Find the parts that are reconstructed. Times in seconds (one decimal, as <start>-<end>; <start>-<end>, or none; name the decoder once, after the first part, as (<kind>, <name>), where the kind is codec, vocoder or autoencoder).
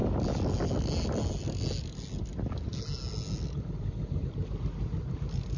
none